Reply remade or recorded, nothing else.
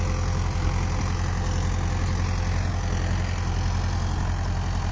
recorded